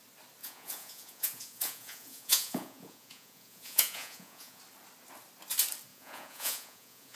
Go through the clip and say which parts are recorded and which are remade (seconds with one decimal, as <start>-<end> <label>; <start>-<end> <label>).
0.0-0.4 recorded; 0.4-4.6 remade; 4.6-5.9 recorded; 5.9-7.2 remade